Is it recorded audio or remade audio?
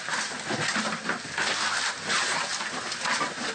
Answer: recorded